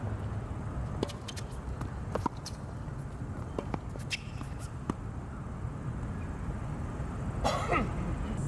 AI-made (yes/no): no